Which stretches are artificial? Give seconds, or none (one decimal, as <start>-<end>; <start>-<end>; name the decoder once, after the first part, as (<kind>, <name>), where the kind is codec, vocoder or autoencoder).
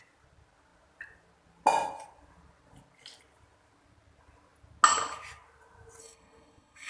6.0-6.9 (codec, SNAC)